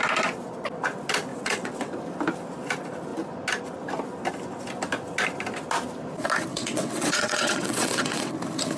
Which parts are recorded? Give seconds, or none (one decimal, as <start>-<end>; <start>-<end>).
0.0-1.3; 2.0-6.5; 8.3-8.8